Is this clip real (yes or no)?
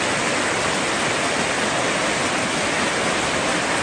yes